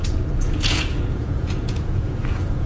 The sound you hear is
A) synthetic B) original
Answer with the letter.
A